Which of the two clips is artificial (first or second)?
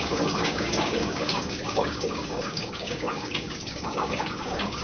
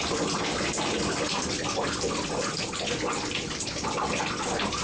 first